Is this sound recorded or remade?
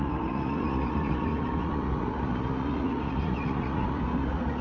remade